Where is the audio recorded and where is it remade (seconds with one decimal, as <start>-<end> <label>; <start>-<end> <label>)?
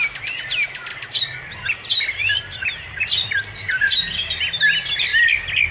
0.0-0.9 recorded; 0.9-4.2 remade; 4.2-5.7 recorded